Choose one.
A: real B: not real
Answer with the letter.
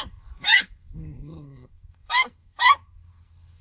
B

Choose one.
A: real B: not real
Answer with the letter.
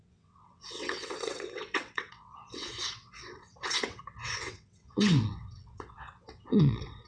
B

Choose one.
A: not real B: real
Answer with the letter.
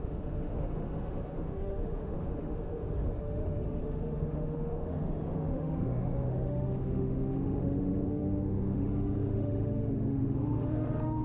A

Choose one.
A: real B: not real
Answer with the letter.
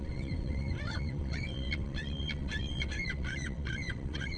B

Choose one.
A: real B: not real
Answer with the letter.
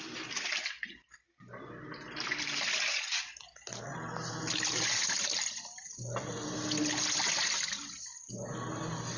A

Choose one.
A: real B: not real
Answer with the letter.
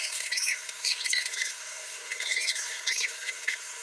B